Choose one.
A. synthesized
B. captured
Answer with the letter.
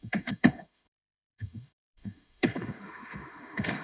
A